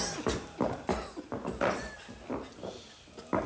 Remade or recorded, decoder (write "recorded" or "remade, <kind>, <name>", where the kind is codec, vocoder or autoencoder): recorded